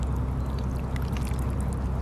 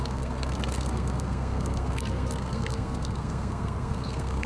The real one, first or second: first